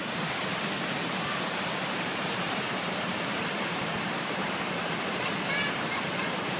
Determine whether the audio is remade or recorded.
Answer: remade